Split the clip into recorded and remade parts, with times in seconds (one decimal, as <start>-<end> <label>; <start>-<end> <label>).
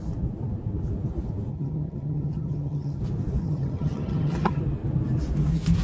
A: 0.0-1.5 recorded; 1.5-3.0 remade; 3.0-3.4 recorded; 3.4-4.6 remade; 4.6-5.8 recorded